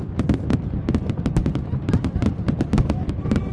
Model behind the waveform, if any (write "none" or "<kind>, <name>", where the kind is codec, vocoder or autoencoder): none